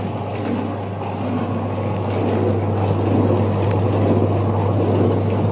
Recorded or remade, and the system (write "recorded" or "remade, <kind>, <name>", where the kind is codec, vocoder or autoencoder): recorded